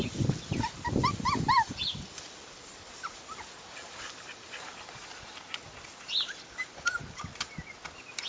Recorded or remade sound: recorded